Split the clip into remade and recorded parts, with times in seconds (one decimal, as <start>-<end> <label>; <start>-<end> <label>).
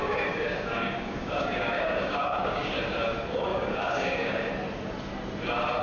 0.0-2.8 remade; 2.8-3.5 recorded; 3.5-4.5 remade; 4.5-5.8 recorded